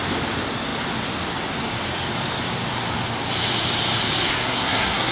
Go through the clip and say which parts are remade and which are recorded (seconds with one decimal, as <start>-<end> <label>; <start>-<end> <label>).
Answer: 0.0-4.3 recorded; 4.3-5.1 remade